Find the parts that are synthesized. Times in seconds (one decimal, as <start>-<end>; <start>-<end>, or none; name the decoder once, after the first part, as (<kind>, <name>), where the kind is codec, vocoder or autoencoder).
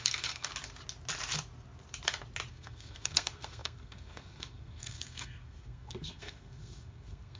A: 0.0-0.5 (codec, SNAC); 2.5-7.4